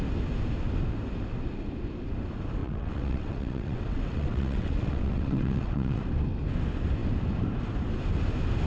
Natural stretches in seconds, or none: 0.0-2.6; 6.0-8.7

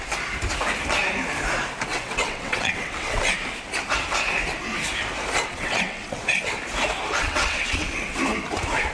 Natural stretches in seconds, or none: 0.0-1.9; 3.2-5.5; 6.2-7.2; 8.2-8.9